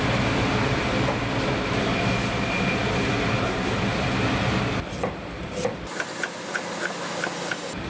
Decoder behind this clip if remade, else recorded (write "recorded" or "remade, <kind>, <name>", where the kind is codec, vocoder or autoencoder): recorded